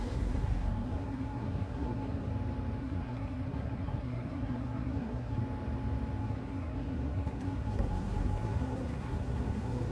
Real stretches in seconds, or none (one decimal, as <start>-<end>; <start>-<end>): 2.3-2.8; 5.4-6.2